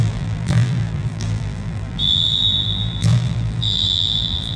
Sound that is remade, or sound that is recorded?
remade